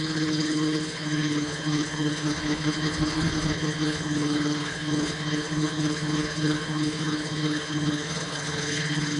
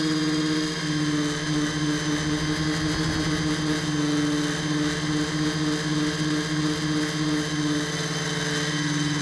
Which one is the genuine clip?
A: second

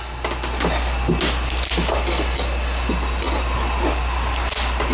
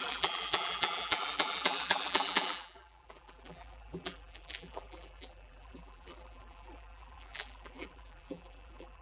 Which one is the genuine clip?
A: first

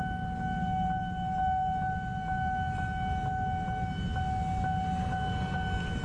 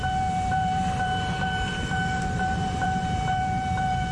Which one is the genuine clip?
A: first